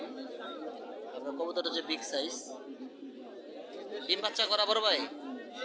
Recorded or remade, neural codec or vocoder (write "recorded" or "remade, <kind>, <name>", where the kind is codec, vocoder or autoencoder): recorded